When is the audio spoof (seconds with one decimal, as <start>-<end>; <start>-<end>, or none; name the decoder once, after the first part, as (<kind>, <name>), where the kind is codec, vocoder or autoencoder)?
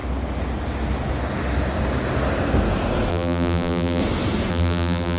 3.1-4.0 (vocoder, BigVGAN v2); 4.5-5.2